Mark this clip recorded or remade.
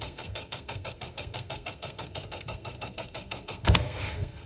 remade